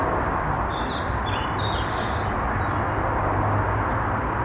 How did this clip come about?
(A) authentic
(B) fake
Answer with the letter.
A